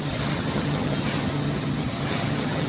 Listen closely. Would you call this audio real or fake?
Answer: fake